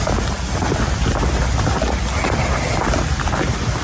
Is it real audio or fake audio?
real